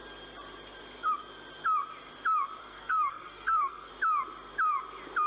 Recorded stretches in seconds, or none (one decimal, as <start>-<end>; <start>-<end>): 0.0-2.6; 3.9-5.3